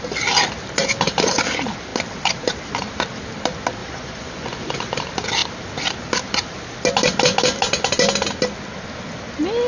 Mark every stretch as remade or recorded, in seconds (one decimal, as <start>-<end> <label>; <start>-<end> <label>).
0.0-3.8 recorded; 3.8-5.0 remade; 5.0-9.7 recorded

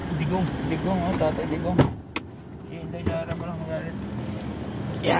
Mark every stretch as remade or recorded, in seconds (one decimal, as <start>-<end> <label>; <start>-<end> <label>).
0.0-5.2 recorded

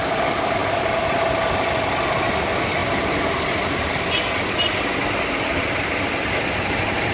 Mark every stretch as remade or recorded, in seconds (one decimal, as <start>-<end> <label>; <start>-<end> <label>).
0.0-7.1 recorded

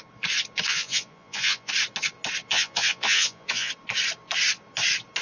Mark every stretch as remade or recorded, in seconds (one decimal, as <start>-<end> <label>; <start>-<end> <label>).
0.0-0.7 recorded; 0.7-1.7 remade; 1.7-2.5 recorded; 2.5-3.7 remade; 3.7-5.2 recorded

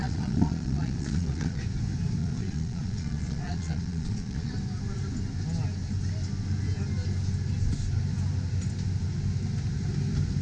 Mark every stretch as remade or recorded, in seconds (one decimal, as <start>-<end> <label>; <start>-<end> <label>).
0.0-1.6 remade; 1.6-2.2 recorded; 2.2-4.5 remade; 4.5-10.4 recorded

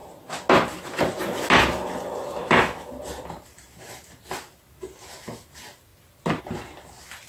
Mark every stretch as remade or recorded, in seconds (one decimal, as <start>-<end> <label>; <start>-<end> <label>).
0.0-2.4 recorded; 2.4-2.9 remade; 2.9-7.3 recorded